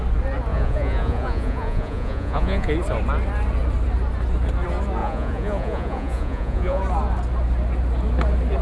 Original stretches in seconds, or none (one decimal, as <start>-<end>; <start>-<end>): 0.0-0.5; 2.7-5.0; 6.8-8.6